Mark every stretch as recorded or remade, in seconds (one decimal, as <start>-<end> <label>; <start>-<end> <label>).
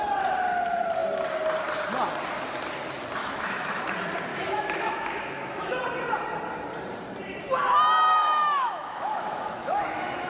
0.0-3.2 recorded; 3.2-3.8 remade; 3.8-4.3 recorded; 4.3-5.8 remade; 5.8-8.1 recorded; 8.1-10.3 remade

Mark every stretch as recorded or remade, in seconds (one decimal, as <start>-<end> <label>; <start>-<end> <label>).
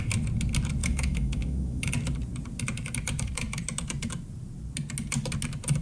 0.0-0.8 recorded; 0.8-1.9 remade; 1.9-5.8 recorded